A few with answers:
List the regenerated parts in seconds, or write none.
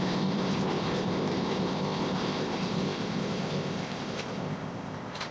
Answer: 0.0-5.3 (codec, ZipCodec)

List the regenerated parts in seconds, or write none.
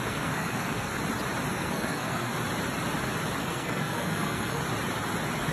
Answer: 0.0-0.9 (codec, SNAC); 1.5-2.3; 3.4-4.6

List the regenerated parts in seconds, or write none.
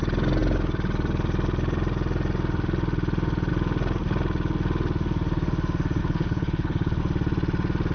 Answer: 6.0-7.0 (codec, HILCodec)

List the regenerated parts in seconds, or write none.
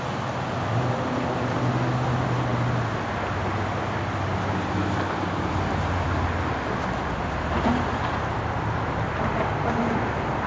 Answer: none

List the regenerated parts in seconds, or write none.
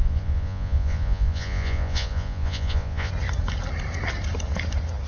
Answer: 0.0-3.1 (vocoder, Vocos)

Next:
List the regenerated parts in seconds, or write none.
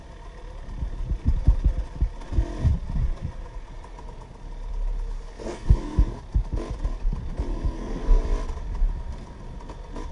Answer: 5.4-6.2 (codec, SNAC); 7.5-8.2